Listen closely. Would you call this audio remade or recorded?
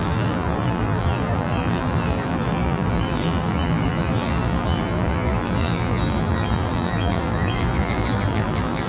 remade